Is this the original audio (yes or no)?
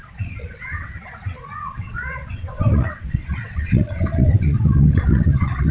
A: no